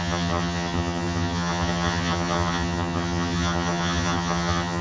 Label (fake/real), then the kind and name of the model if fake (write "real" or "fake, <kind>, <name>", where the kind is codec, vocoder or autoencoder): fake, vocoder, HiFi-GAN